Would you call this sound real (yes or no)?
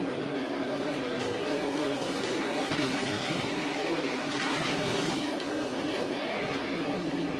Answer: no